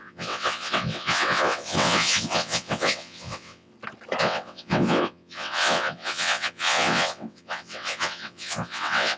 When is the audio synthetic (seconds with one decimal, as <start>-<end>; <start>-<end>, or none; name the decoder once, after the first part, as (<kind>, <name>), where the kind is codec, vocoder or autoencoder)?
0.0-3.7 (vocoder, WaveNeXt); 4.2-9.2